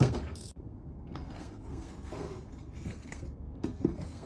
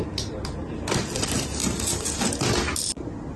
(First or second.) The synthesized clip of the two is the first